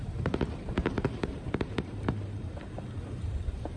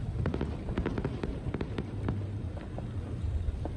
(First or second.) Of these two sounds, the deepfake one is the first